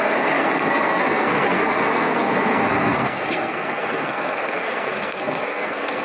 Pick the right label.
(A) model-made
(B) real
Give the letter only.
A